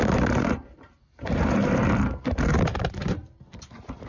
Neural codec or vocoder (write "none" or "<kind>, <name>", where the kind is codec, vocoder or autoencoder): vocoder, BigVGAN v2